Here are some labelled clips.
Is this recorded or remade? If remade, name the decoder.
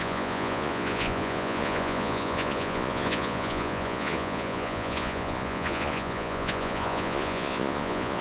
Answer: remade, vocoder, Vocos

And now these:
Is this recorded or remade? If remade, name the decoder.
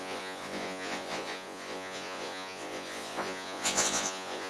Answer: remade, vocoder, Vocos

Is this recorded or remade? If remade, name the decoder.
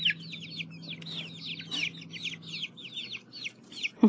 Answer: recorded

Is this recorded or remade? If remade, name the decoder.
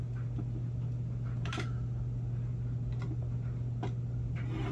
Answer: recorded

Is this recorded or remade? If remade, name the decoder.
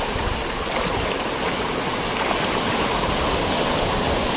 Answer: recorded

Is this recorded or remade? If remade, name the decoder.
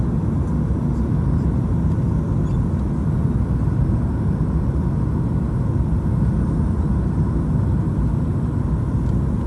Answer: recorded